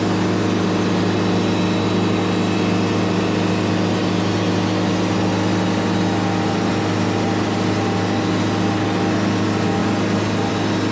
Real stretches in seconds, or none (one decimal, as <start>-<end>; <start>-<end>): 0.0-10.9